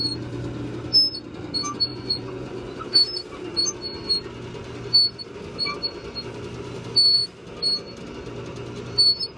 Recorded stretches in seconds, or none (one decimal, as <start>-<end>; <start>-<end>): 0.0-1.9; 2.8-9.4

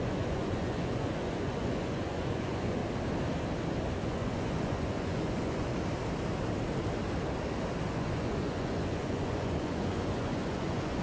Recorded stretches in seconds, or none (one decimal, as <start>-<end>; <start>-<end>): 2.8-4.0; 5.7-7.9

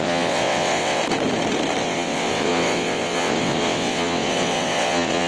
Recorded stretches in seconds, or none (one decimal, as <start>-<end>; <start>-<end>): 1.0-1.8

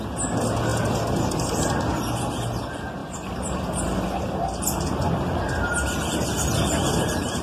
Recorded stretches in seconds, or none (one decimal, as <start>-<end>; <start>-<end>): 0.0-3.0; 4.2-7.4

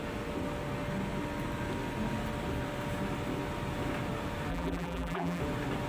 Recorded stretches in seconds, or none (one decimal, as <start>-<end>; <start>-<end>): 0.0-4.5; 5.4-5.9

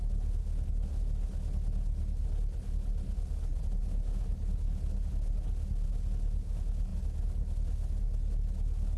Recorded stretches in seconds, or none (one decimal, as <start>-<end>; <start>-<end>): 0.0-9.0

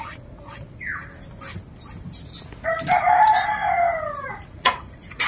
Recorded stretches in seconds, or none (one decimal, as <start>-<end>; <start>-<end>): 1.0-4.2